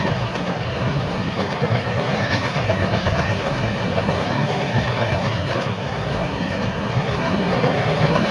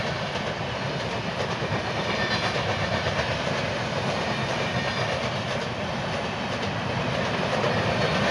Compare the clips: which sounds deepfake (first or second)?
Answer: first